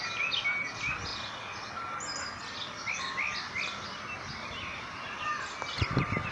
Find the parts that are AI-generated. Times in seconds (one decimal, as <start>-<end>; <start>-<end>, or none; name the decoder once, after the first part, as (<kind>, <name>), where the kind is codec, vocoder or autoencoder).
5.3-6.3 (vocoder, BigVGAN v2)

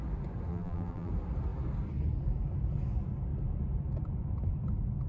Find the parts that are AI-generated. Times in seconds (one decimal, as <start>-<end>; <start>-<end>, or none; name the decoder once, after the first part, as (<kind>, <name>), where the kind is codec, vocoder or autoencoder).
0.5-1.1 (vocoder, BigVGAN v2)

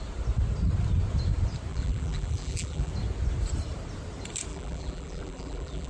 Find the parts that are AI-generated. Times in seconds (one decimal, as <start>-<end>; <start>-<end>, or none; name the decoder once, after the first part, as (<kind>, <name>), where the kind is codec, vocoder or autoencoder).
1.7-2.9 (vocoder, BigVGAN v2); 4.5-5.9